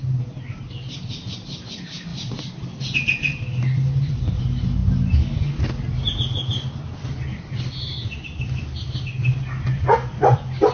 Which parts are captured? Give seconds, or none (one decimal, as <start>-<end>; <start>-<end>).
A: 0.0-10.7